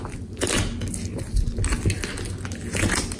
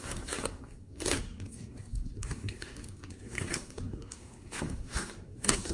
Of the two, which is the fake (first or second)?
second